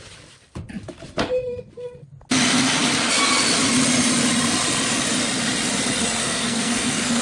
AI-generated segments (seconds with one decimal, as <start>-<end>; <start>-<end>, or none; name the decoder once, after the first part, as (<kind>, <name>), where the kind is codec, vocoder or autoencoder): 6.2-7.2 (codec, SNAC)